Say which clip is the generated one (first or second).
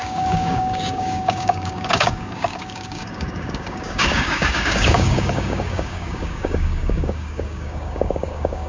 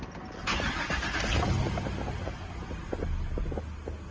first